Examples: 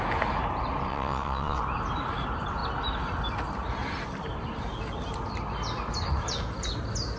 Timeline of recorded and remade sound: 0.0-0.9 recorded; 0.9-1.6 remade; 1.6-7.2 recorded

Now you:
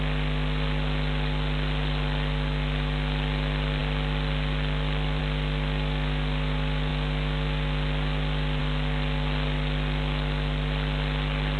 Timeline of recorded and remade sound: 0.0-11.6 recorded